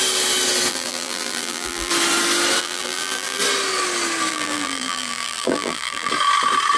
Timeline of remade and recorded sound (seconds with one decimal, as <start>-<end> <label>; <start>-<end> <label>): 0.0-0.7 recorded; 0.7-1.9 remade; 1.9-2.6 recorded; 2.6-3.4 remade; 3.4-4.3 recorded; 4.3-6.1 remade; 6.1-6.8 recorded